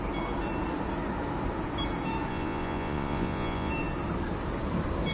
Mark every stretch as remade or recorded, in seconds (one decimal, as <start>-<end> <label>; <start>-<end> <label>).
0.0-2.3 recorded; 2.3-3.7 remade; 3.7-5.1 recorded